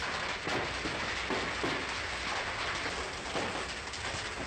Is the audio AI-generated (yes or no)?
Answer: no